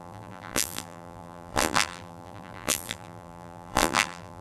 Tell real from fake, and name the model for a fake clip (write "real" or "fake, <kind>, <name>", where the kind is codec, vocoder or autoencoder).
fake, vocoder, BigVGAN v2